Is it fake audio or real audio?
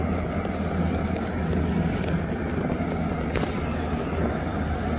real